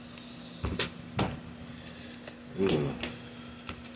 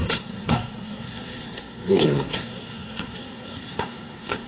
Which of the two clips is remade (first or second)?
second